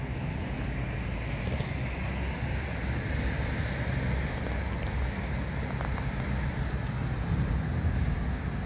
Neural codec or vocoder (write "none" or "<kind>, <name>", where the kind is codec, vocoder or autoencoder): none